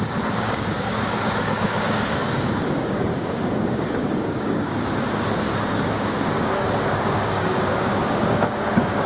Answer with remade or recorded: remade